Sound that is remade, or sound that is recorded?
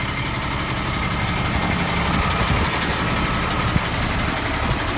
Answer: recorded